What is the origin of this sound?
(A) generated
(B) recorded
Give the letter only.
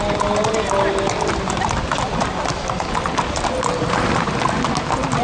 B